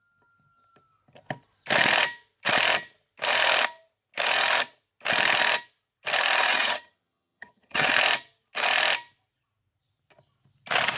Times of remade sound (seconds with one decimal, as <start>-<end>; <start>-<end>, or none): 6.4-7.9